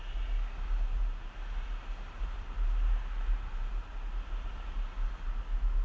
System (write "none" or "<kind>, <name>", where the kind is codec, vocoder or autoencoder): none